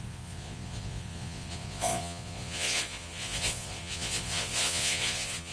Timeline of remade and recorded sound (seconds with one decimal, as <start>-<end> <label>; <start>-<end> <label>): 0.0-5.5 remade